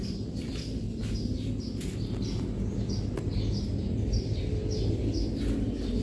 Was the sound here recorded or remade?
recorded